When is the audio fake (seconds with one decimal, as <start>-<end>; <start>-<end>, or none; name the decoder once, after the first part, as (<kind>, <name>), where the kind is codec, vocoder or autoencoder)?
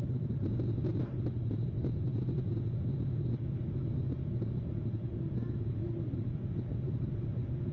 none